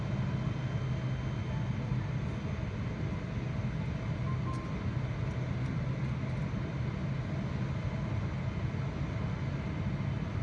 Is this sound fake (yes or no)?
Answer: no